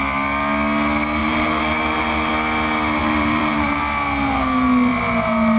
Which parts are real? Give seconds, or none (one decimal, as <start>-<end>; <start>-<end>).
0.0-1.2; 2.3-3.0; 3.8-5.6